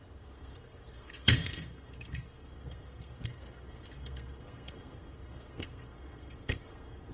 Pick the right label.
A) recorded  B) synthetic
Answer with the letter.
B